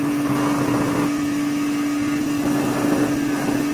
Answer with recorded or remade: recorded